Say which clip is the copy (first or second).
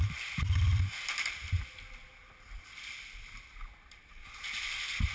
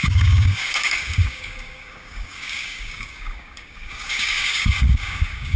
second